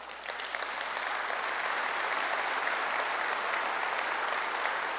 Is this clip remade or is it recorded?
recorded